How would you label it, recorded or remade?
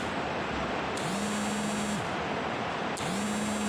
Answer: recorded